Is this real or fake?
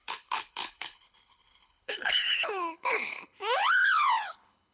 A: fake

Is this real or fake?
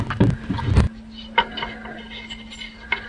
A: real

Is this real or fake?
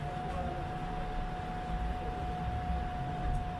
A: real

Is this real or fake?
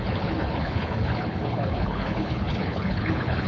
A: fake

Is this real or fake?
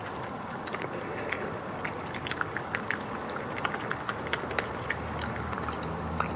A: real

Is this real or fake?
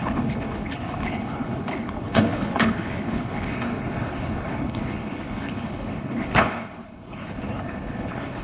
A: fake